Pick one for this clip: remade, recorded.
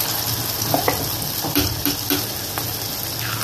recorded